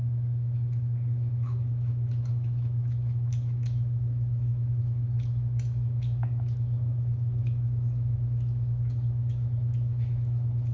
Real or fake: fake